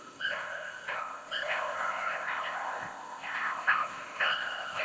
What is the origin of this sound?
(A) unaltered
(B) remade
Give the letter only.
B